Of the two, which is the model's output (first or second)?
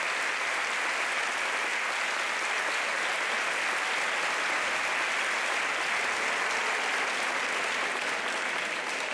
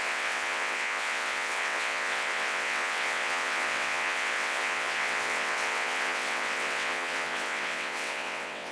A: second